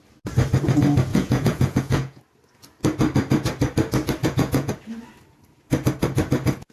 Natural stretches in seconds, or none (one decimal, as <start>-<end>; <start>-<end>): 0.0-1.1; 2.2-4.2; 4.7-6.7